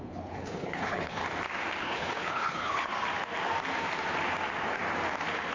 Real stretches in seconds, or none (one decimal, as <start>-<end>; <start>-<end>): 1.2-1.8; 2.9-5.5

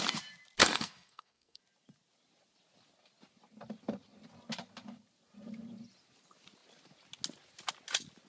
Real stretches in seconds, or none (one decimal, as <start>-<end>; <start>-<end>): 0.0-0.6; 1.6-8.3